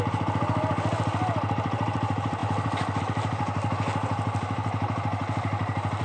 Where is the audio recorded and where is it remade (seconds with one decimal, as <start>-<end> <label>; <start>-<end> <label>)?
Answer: 0.0-6.0 recorded